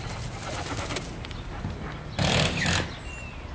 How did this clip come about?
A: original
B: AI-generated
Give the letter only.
A